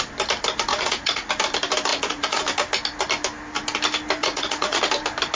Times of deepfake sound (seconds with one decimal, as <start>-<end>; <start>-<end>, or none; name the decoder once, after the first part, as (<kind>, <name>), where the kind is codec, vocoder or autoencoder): 0.7-1.3 (vocoder, Vocos); 1.9-2.4; 4.2-4.8